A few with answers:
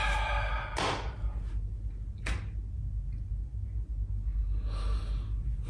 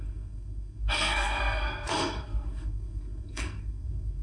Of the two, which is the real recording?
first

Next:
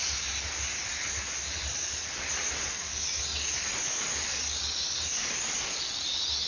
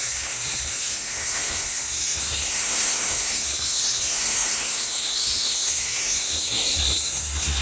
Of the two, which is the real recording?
first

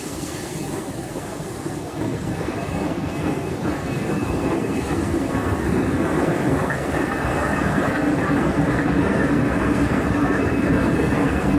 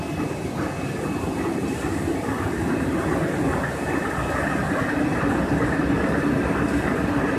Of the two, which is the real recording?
second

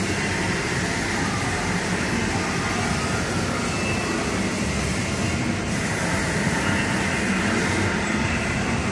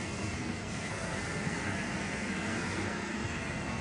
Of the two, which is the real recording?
first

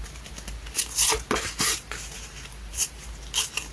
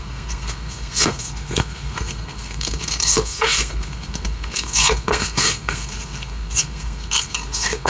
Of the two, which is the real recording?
first